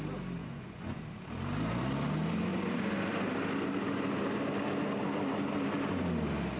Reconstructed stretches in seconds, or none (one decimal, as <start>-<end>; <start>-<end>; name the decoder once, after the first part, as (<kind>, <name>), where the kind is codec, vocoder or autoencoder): 0.4-1.0 (vocoder, Vocos)